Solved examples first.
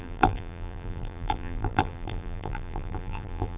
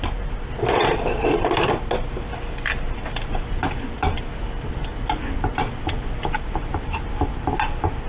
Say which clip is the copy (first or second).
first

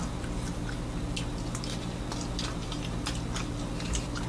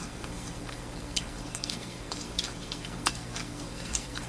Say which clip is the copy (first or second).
second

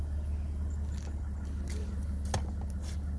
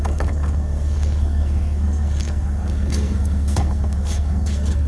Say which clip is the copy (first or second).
second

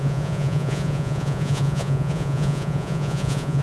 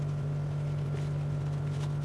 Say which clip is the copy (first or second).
first